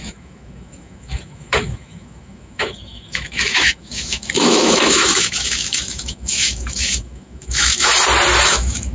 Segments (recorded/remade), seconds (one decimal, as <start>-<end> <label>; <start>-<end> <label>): 0.0-7.9 remade; 7.9-8.5 recorded; 8.5-8.9 remade